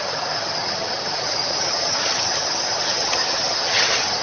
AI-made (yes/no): yes